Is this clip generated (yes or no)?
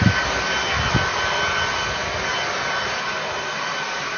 no